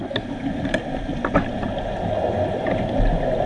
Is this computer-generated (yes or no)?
no